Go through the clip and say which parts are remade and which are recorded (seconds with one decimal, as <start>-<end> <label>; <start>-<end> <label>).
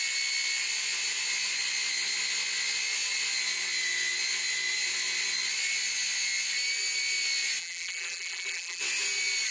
0.0-7.6 recorded; 7.6-8.8 remade; 8.8-9.5 recorded